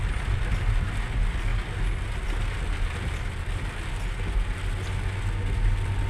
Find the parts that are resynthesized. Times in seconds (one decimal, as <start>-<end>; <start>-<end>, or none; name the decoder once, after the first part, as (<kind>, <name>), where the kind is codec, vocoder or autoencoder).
none